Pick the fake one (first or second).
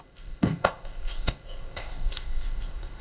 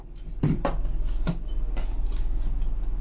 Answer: first